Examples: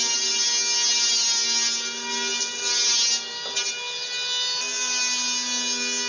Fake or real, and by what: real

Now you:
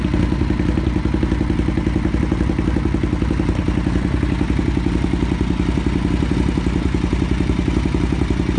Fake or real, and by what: real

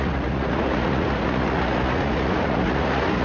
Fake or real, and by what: fake, vocoder, Vocos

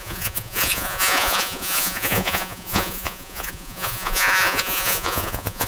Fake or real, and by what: fake, vocoder, Vocos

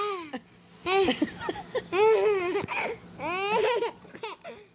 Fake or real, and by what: real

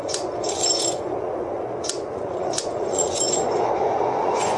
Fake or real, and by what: fake, vocoder, Vocos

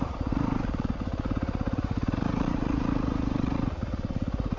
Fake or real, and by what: fake, vocoder, Vocos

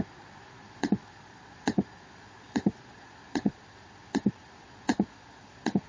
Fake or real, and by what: fake, vocoder, Vocos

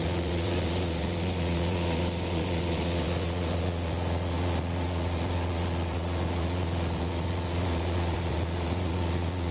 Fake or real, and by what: fake, vocoder, Vocos